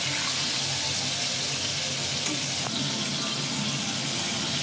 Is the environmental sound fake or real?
real